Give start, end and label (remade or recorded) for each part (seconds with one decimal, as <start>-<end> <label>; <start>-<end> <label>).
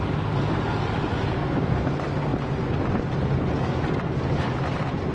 0.0-1.4 recorded; 1.4-1.9 remade; 1.9-5.1 recorded